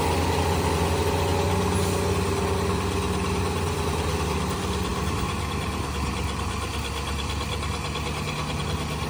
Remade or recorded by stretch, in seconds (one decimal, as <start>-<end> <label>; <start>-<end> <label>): 0.0-9.1 recorded